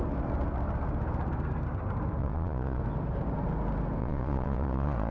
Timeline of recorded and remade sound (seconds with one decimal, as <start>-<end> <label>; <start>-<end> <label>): 0.0-2.2 recorded; 2.2-2.8 remade; 2.8-4.0 recorded; 4.0-5.1 remade

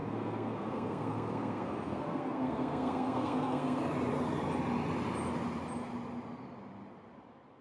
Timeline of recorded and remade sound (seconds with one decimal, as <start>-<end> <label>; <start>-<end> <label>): 0.0-3.8 remade; 3.8-7.6 recorded

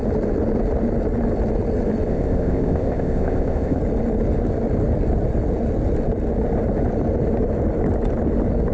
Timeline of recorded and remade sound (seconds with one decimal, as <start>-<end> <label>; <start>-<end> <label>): 0.0-2.1 recorded; 2.1-3.8 remade; 3.8-8.7 recorded

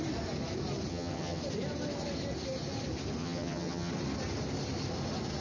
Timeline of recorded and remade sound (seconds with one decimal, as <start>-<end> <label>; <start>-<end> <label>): 0.0-0.9 recorded; 0.9-1.4 remade; 1.4-3.2 recorded; 3.2-3.9 remade; 3.9-5.4 recorded

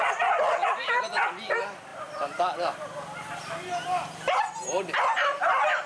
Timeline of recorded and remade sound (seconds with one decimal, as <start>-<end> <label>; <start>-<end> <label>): 0.0-5.9 remade

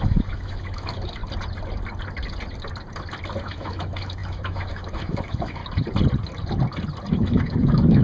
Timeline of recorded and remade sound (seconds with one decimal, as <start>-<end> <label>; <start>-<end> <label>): 0.0-1.2 remade; 1.2-3.4 recorded; 3.4-5.6 remade; 5.6-7.1 recorded; 7.1-8.0 remade

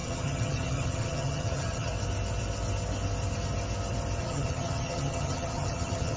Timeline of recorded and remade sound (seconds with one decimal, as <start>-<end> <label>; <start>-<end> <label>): 0.0-1.9 remade; 1.9-4.2 recorded; 4.2-6.2 remade